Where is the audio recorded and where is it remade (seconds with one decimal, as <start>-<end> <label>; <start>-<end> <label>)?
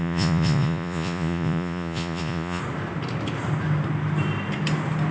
0.0-2.6 remade; 2.6-5.1 recorded